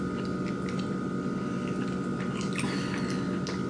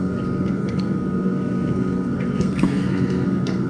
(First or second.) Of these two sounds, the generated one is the second